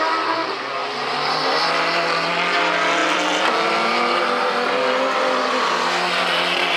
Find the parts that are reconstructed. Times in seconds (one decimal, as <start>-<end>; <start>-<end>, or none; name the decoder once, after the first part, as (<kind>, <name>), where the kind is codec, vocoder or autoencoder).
0.8-2.3 (vocoder, BigVGAN v2); 3.0-4.2